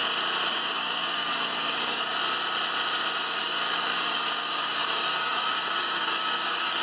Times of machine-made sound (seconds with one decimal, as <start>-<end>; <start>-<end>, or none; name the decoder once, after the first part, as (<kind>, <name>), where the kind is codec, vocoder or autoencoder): 0.5-2.1 (codec, DAC); 3.4-6.8